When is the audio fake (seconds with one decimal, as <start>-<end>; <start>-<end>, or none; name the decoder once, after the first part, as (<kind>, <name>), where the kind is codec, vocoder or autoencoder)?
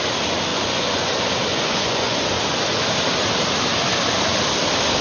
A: 0.5-1.1 (vocoder, Vocos); 1.5-2.2